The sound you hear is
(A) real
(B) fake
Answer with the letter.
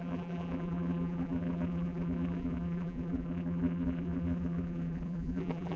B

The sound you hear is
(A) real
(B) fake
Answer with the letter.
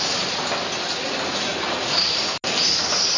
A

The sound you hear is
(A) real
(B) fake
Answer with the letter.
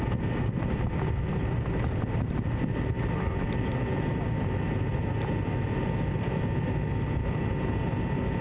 A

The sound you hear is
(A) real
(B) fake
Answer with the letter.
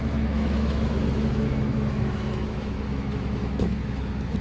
B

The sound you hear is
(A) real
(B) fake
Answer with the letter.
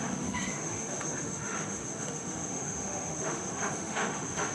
B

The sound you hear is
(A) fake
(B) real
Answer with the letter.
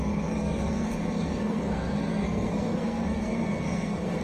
A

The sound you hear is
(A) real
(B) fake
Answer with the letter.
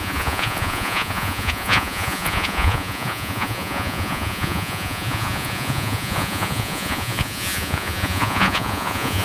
B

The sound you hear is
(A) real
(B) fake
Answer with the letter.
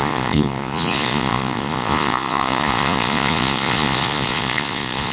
B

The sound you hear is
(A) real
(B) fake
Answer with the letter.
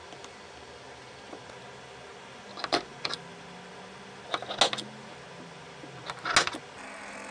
A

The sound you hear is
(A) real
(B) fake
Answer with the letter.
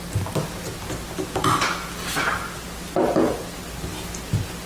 A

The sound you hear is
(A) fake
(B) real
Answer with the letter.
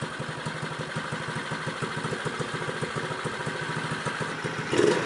B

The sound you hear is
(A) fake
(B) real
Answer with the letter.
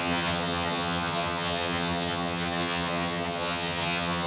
A